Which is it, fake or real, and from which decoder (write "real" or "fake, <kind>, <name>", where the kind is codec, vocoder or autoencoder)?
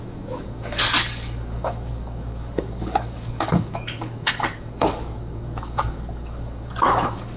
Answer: fake, codec, DAC